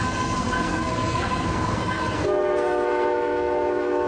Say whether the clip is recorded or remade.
remade